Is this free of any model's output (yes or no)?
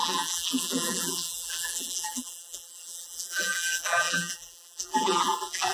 no